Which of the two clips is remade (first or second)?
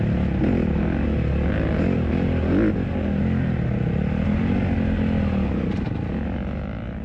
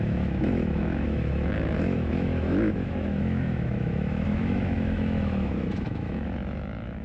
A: second